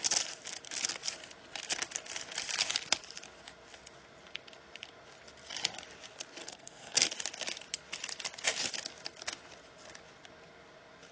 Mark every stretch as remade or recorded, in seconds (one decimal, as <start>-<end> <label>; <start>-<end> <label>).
0.0-6.4 recorded; 6.4-7.1 remade; 7.1-11.1 recorded